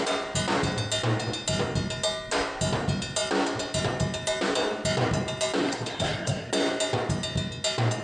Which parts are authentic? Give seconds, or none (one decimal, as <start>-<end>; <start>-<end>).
0.0-5.6; 6.5-8.0